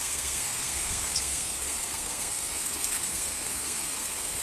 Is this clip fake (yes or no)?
yes